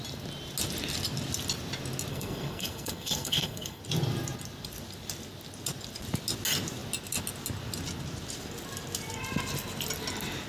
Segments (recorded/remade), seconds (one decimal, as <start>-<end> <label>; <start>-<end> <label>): 0.0-2.1 recorded; 2.1-3.8 remade; 3.8-10.5 recorded